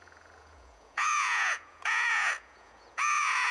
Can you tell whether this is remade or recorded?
remade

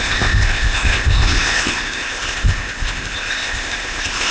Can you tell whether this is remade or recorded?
remade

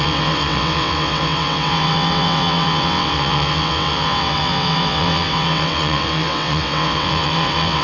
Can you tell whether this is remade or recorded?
remade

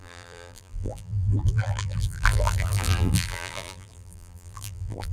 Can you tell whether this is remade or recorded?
remade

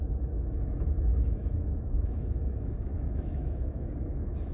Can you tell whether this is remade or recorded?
remade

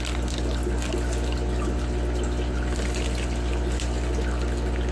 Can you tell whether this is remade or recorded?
recorded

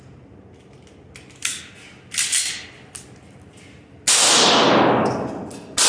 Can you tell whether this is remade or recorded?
recorded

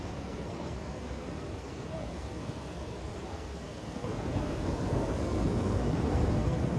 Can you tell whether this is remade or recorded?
remade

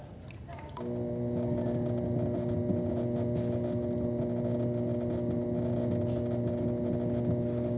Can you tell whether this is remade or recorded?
recorded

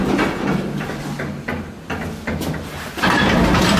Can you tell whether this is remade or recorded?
recorded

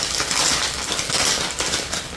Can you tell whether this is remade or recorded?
remade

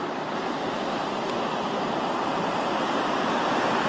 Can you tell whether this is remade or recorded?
remade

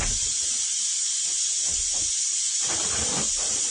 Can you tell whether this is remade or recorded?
recorded